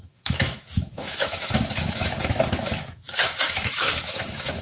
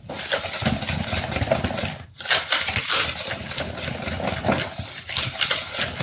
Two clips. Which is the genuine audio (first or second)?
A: second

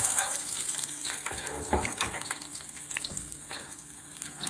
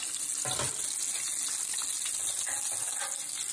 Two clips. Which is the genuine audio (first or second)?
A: second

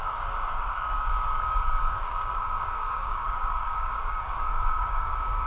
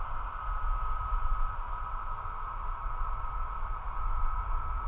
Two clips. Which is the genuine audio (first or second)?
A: second